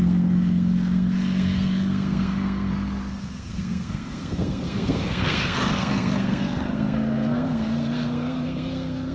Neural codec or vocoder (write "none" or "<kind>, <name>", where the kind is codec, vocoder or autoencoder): codec, SNAC